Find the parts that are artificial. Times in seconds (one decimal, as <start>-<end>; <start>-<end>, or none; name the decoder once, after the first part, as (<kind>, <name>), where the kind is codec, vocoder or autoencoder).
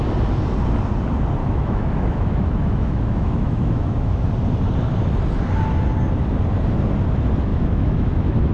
1.4-4.3 (autoencoder, DAC-VAE); 7.5-8.5